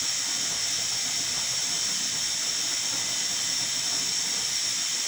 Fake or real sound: real